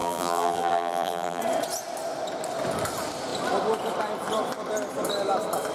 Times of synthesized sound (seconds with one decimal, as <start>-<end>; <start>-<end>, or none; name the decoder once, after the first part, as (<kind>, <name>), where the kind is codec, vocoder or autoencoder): 0.0-1.4 (vocoder, BigVGAN v2)